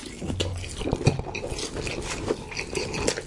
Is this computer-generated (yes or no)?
no